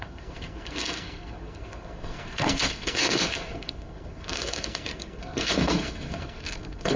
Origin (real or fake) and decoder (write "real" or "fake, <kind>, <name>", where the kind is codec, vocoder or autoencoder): fake, codec, SNAC